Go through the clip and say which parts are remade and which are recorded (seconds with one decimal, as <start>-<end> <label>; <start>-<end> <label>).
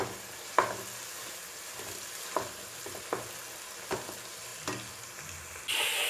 0.0-6.1 recorded